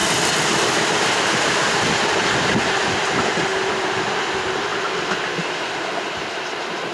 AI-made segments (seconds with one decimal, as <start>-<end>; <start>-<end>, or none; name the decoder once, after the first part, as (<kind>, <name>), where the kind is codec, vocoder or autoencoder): 4.7-5.2 (vocoder, BigVGAN v2)